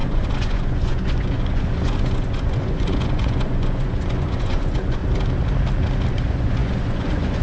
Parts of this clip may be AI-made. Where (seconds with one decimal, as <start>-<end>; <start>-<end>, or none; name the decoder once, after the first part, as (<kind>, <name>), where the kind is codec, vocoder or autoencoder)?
0.0-5.0 (vocoder, Vocos); 6.1-7.4